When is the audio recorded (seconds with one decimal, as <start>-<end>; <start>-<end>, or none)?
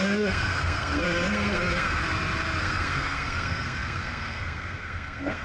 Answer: 2.0-2.6